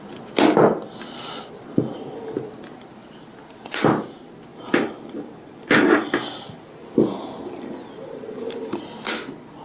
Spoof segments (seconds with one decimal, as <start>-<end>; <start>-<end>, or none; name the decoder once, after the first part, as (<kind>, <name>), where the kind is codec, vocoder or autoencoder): 4.5-8.8 (vocoder, BigVGAN v2)